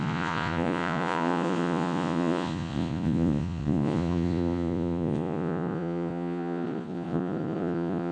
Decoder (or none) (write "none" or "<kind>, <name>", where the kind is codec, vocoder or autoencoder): vocoder, Vocos